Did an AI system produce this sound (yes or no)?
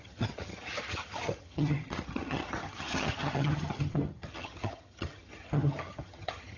yes